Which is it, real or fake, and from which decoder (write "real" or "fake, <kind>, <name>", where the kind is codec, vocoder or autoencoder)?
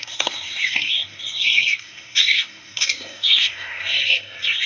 fake, codec, SNAC